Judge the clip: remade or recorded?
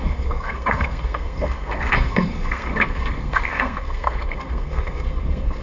remade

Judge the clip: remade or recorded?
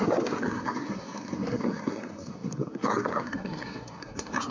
remade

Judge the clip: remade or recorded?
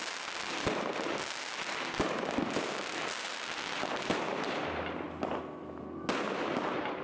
recorded